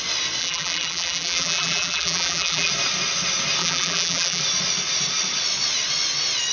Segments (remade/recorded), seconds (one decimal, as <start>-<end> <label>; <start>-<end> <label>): 0.0-0.4 recorded; 0.4-2.7 remade; 2.7-3.6 recorded; 3.6-4.4 remade; 4.4-6.5 recorded